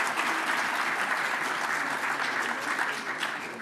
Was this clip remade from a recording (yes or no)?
no